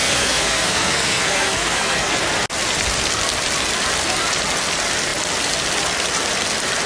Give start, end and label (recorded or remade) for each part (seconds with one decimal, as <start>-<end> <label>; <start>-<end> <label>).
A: 0.0-2.2 remade; 2.2-6.9 recorded